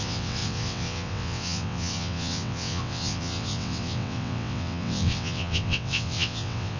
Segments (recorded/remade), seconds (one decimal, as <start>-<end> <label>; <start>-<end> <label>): 0.0-6.8 remade